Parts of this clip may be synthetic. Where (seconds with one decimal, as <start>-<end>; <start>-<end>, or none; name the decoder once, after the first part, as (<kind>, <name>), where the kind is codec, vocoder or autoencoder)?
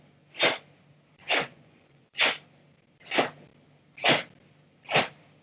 1.2-2.3 (vocoder, Vocos)